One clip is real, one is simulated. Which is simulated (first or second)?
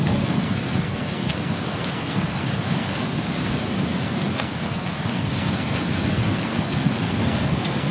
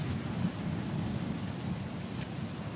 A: first